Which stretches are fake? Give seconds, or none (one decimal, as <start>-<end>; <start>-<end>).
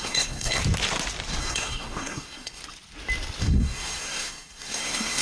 0.0-0.6; 1.4-2.6; 3.4-5.2